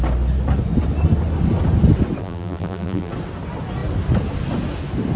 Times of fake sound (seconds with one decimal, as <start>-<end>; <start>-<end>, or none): 2.2-3.1